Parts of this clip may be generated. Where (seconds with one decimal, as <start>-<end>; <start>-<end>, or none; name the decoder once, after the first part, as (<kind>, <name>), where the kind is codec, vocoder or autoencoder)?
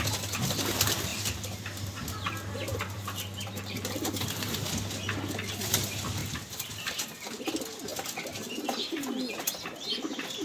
1.1-2.3 (vocoder, BigVGAN v2); 2.7-4.7; 6.2-7.3